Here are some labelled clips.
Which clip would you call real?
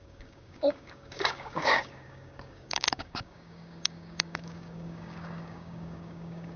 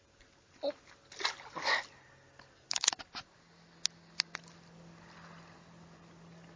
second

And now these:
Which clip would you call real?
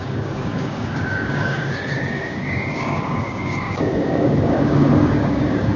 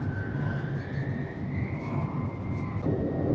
second